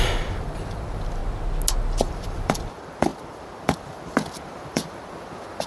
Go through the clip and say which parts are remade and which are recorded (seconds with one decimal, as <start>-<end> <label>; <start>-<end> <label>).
0.0-1.2 remade; 1.2-2.0 recorded; 2.0-5.7 remade